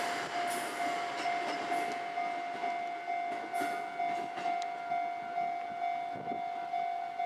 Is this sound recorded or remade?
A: recorded